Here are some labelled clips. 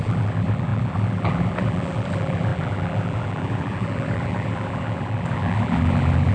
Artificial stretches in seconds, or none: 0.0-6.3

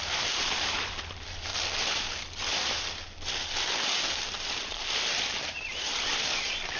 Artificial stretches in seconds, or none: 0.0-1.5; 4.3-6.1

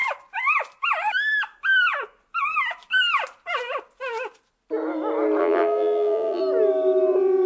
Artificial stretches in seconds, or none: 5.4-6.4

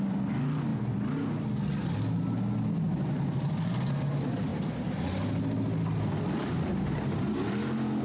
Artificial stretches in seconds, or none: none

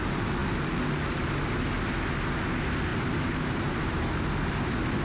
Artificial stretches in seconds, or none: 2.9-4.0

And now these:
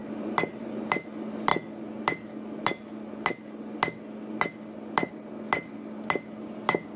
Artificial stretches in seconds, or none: 0.0-0.7

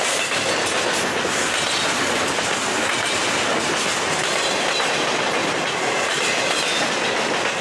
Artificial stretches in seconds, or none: 2.9-3.5; 5.4-6.3